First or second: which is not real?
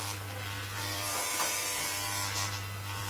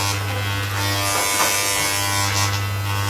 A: first